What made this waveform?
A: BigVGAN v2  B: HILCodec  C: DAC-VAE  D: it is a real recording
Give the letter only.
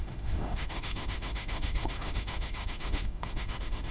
C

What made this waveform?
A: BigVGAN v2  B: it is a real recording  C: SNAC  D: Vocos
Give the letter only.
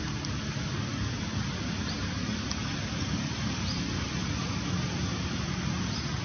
B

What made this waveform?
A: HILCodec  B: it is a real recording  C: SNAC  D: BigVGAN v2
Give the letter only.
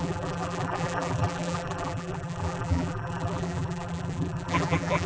D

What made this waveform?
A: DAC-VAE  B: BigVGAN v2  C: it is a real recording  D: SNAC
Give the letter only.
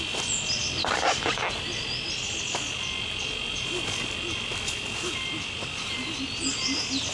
C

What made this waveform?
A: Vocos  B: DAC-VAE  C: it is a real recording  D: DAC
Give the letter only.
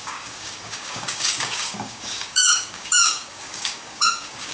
D